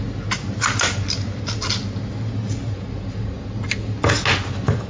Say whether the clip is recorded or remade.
recorded